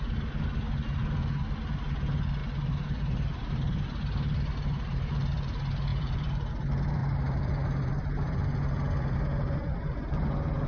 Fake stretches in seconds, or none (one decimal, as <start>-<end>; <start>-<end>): 2.4-5.1; 5.9-6.5; 7.0-8.6